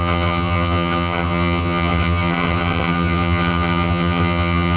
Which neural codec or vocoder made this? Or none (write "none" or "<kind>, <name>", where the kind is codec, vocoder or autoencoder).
vocoder, HiFi-GAN